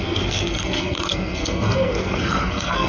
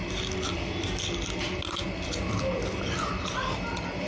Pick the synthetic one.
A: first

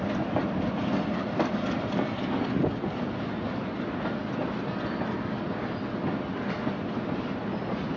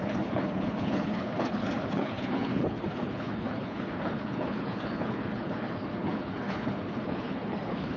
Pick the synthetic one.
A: second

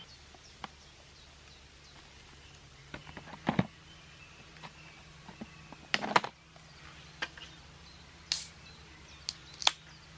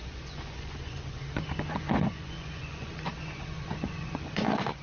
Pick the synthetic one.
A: second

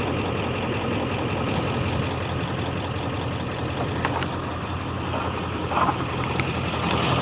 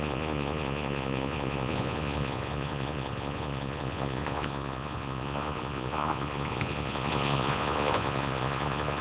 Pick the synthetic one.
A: second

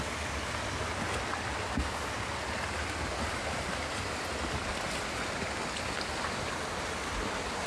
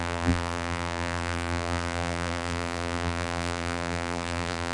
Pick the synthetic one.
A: second